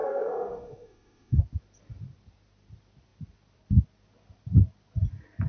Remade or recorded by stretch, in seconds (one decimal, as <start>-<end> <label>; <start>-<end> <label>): 0.0-1.4 remade; 1.4-5.5 recorded